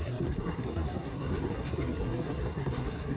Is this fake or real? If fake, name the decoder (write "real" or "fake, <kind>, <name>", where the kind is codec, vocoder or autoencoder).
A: fake, codec, SNAC